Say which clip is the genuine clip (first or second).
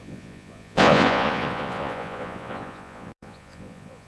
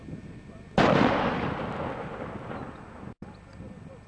second